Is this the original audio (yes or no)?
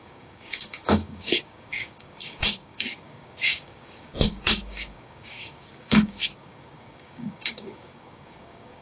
no